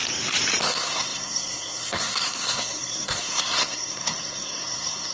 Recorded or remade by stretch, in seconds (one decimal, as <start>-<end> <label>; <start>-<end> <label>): 0.0-0.6 recorded; 0.6-5.1 remade